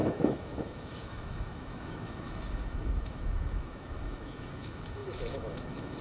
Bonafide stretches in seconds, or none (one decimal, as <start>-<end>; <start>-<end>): none